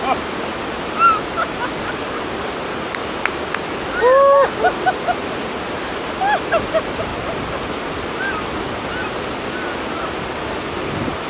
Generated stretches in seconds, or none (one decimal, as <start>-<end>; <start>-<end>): none